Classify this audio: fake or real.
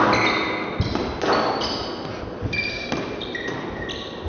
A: real